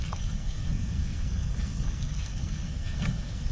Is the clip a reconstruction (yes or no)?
yes